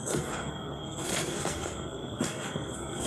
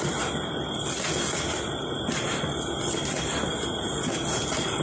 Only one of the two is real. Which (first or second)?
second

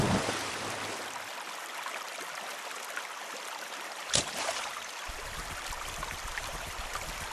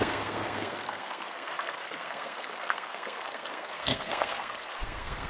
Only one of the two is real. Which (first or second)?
first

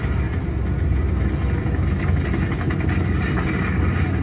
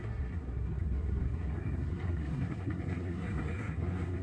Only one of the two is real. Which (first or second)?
first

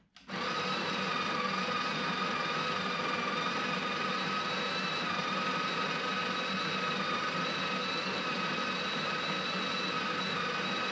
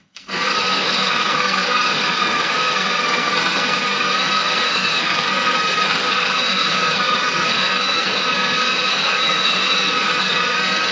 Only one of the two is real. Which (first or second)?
first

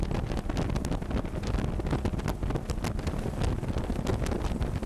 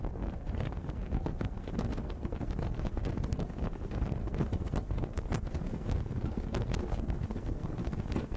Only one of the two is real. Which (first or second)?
first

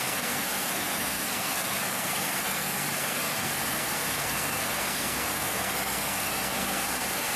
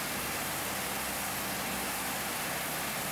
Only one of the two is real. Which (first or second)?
second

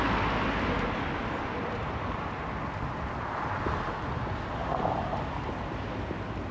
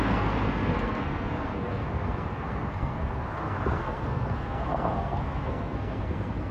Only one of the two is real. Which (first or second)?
first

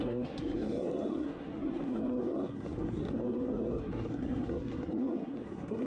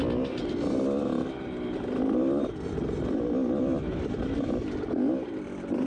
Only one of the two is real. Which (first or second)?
second